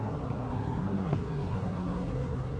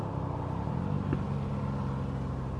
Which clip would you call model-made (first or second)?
first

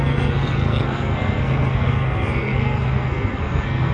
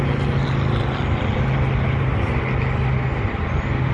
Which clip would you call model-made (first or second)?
first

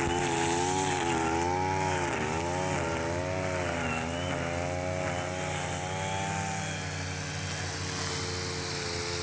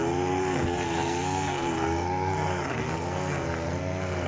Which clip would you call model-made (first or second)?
second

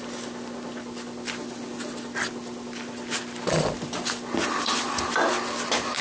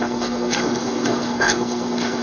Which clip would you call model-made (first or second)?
second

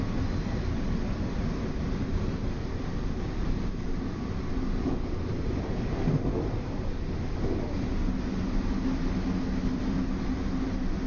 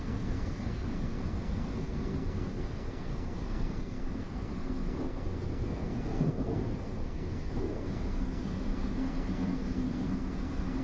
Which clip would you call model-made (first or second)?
second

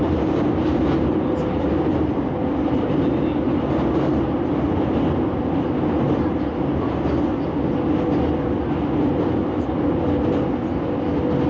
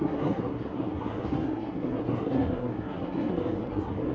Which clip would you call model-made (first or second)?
second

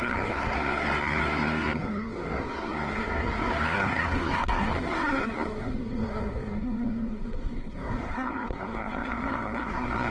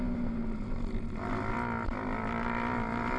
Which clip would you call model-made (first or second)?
first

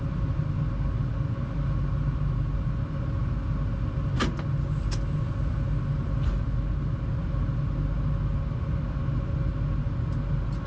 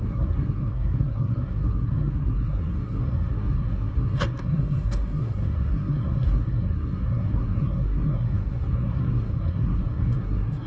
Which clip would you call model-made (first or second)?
second